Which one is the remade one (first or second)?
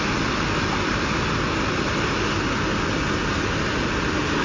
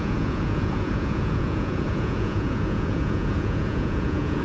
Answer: second